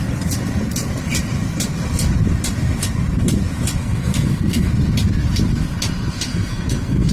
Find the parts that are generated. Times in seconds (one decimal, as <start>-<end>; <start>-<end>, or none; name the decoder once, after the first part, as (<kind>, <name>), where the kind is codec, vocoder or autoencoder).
3.8-4.7 (codec, SNAC); 6.3-7.1